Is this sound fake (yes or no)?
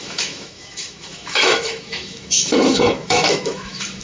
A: yes